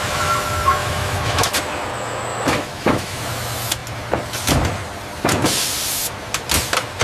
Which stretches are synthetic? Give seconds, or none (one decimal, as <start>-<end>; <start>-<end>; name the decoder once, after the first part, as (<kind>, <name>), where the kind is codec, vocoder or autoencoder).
0.8-1.6 (autoencoder, DAC-VAE); 2.3-3.2